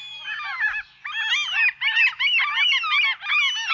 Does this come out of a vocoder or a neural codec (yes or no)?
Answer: no